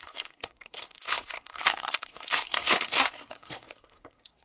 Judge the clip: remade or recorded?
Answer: remade